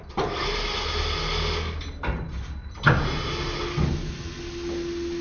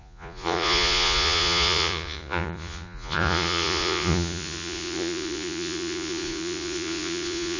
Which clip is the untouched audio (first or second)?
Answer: first